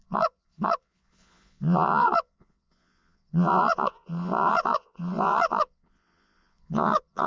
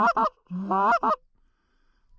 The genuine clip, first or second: second